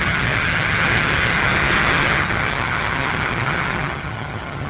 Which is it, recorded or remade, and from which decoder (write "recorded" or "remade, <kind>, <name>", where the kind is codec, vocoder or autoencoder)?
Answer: remade, vocoder, HiFi-GAN